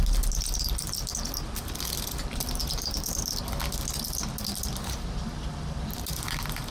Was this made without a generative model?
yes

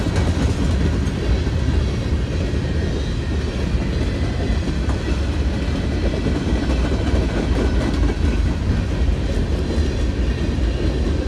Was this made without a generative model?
yes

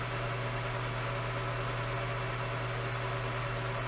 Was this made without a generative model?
yes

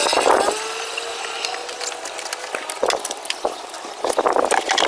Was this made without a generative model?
yes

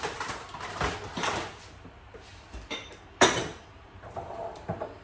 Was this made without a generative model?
yes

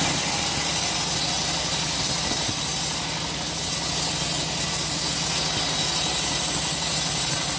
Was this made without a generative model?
yes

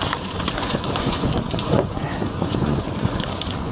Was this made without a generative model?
no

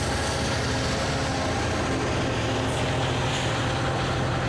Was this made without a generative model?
yes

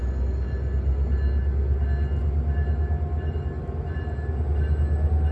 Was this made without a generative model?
yes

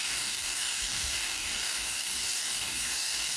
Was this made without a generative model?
no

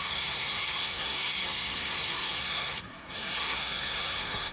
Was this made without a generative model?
no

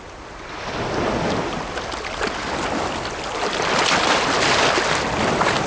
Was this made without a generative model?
yes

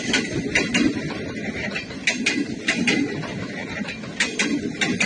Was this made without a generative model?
yes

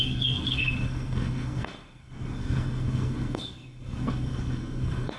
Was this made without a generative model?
no